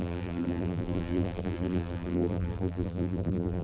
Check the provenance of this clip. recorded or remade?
remade